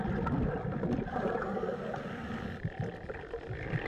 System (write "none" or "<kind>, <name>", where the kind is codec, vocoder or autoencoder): none